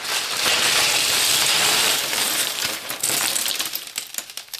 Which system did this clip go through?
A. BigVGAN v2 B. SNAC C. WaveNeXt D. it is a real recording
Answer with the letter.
A